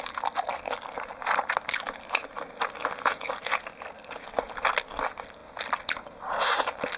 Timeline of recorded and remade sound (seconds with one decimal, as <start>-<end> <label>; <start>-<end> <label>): 0.0-7.0 recorded

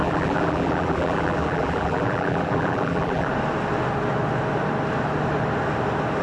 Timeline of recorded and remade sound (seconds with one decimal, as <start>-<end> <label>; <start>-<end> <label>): 0.0-3.3 remade; 3.3-6.2 recorded

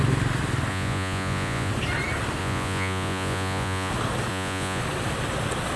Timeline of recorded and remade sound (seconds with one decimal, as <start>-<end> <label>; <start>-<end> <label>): 0.0-0.7 recorded; 0.7-1.7 remade; 1.7-2.4 recorded; 2.4-3.9 remade; 3.9-4.3 recorded; 4.3-4.8 remade; 4.8-5.8 recorded